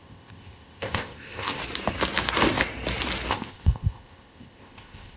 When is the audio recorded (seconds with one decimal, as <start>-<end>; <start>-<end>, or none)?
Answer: 1.6-3.3